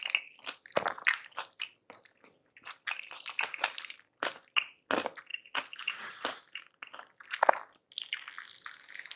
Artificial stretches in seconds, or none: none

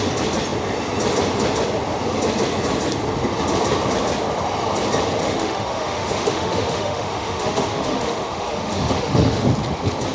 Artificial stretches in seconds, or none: 5.2-9.4 (autoencoder, DAC-VAE)

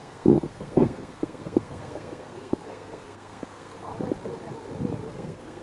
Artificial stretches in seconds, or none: 0.0-3.9 (codec, SNAC); 5.1-5.6